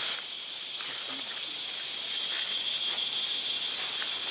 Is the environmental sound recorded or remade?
recorded